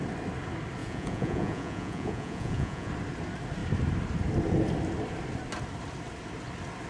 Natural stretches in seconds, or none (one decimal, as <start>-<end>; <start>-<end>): 0.0-0.8; 2.9-6.9